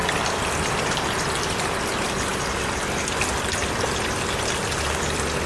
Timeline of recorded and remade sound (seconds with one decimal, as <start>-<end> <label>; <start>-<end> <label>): 0.0-0.8 remade; 0.8-5.5 recorded